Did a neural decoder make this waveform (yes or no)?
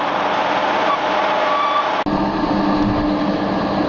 no